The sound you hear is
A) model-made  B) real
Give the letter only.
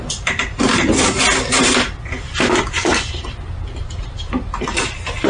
B